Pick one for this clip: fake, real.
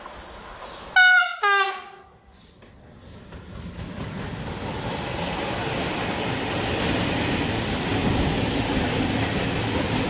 real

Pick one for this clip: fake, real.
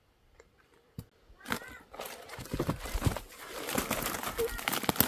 real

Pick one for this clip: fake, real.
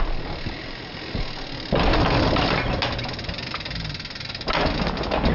real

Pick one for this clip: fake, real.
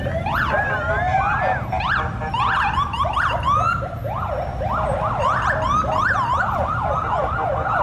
real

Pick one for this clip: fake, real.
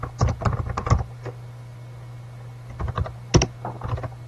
real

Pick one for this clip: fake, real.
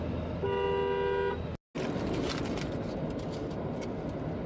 real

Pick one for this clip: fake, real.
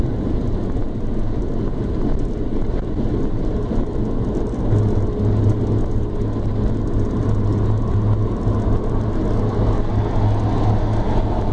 real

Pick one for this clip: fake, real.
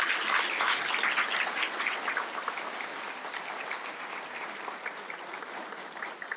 real